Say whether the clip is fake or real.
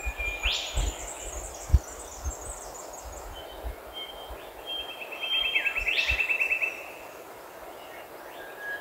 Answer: real